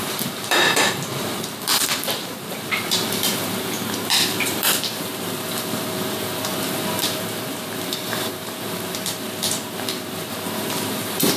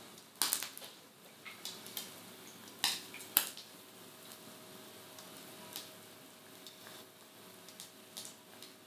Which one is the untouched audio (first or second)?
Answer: second